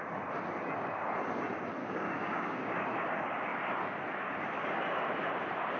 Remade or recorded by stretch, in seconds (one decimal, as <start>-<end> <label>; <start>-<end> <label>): 0.0-1.8 recorded; 1.8-2.8 remade; 2.8-5.8 recorded